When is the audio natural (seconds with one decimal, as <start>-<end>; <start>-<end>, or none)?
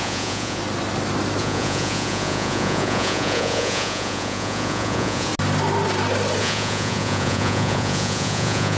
0.6-1.4; 5.3-6.4